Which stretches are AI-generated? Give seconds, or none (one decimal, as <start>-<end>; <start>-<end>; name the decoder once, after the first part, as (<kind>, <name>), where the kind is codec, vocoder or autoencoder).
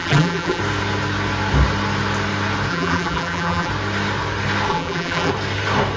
0.0-0.6 (vocoder, BigVGAN v2); 2.7-3.7; 4.7-5.3